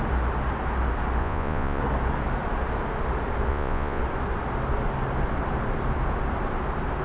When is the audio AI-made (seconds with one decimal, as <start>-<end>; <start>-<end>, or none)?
1.2-1.8; 3.5-4.0